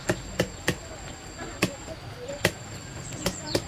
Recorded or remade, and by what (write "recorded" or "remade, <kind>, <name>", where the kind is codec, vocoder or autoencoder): recorded